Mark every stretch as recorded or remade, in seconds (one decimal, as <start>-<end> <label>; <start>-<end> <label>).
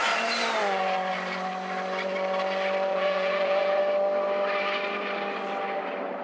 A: 0.0-2.9 recorded; 2.9-3.8 remade; 3.8-6.2 recorded